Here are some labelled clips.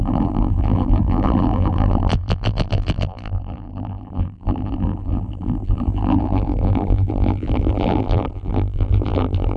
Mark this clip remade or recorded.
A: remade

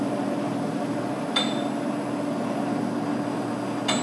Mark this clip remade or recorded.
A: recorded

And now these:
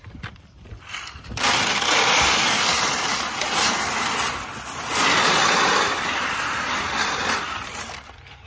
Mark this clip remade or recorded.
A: remade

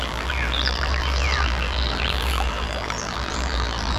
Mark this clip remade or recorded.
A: remade